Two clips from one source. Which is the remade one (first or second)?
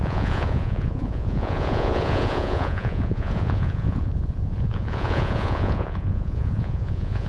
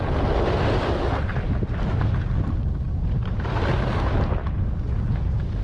first